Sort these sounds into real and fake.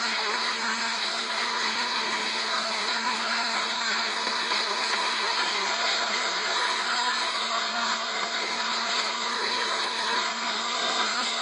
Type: fake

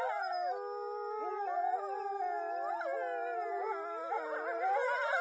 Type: real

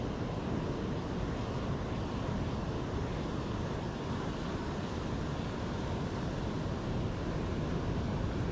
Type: real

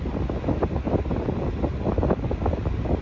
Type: real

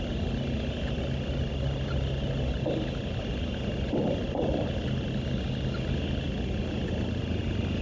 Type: real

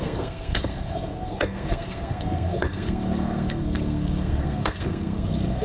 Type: fake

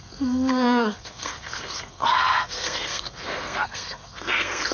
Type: fake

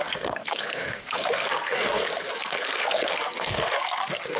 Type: fake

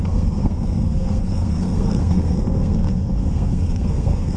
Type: fake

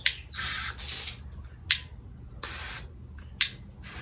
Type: real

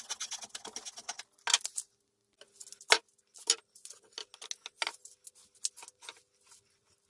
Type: real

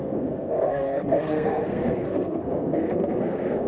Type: fake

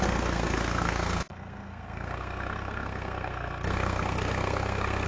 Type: fake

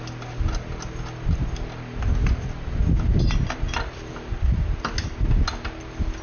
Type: real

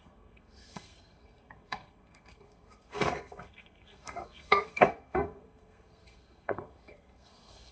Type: fake